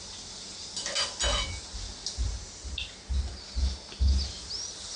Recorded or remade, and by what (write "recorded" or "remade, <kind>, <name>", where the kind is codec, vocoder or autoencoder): recorded